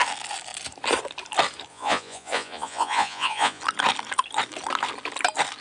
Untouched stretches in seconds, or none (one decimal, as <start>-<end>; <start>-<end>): 0.0-1.7; 3.6-5.6